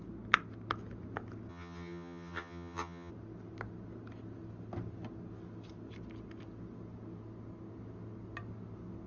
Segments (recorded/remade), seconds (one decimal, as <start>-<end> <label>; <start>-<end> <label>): 0.0-1.5 recorded; 1.5-3.1 remade; 3.1-9.1 recorded